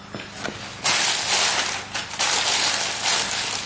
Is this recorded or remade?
recorded